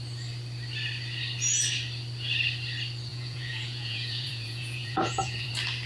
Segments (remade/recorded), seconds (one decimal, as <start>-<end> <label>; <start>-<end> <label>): 0.0-3.1 recorded; 3.1-5.5 remade; 5.5-5.9 recorded